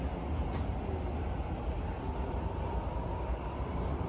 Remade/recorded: recorded